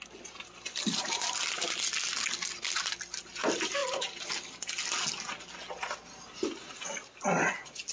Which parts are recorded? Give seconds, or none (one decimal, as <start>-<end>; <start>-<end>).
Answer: 0.0-7.9